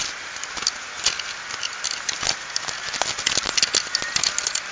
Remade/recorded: recorded